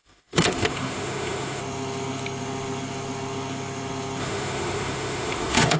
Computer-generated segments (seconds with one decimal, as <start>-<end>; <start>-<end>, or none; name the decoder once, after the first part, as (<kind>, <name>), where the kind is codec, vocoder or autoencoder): 0.0-1.6 (autoencoder, DAC-VAE); 4.2-5.8